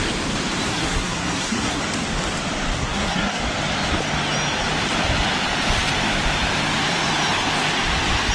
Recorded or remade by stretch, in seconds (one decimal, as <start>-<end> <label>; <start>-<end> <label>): 0.0-0.7 recorded; 0.7-1.8 remade; 1.8-2.8 recorded; 2.8-3.4 remade; 3.4-8.3 recorded